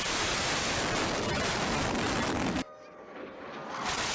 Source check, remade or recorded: recorded